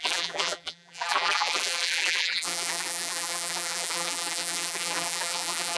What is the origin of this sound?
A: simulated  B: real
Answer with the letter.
A